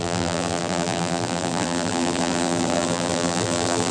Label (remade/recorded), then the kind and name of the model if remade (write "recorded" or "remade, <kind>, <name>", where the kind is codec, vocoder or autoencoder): remade, vocoder, BigVGAN v2